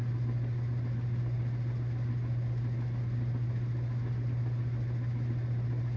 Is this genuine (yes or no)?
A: yes